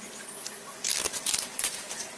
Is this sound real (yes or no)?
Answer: no